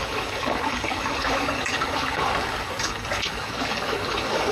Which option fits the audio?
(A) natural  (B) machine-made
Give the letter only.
B